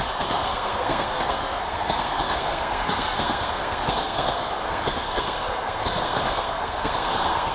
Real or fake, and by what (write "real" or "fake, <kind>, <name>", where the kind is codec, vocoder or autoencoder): fake, codec, SNAC